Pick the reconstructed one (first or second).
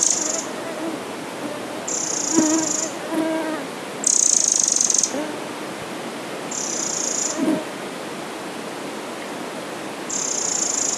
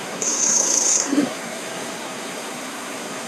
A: second